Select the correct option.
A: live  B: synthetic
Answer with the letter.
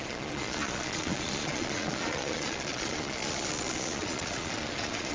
B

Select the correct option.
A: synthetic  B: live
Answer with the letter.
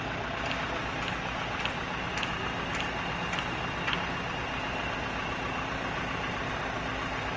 B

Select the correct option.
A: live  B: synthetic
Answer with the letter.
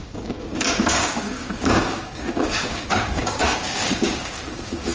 B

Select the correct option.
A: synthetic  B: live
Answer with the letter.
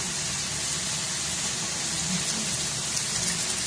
B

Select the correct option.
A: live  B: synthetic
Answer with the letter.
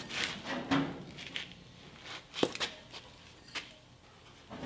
A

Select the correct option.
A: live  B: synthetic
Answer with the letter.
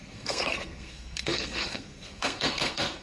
B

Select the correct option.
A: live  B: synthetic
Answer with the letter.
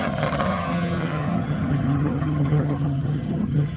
B